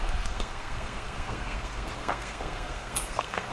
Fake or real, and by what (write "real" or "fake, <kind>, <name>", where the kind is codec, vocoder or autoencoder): fake, codec, SNAC